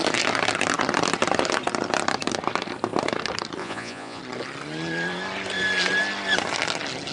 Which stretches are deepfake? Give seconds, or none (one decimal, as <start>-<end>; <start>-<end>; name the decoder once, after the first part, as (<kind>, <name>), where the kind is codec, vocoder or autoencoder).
3.6-4.2 (vocoder, Vocos)